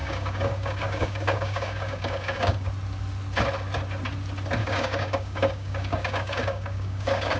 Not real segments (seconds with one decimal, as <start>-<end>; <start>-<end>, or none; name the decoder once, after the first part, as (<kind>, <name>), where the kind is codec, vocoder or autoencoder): 0.0-2.7 (codec, DAC); 4.6-7.4